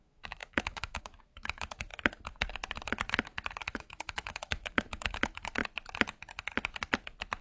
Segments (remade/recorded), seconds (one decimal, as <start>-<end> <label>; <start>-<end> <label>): 0.0-1.9 remade; 1.9-3.6 recorded; 3.6-5.6 remade; 5.6-7.4 recorded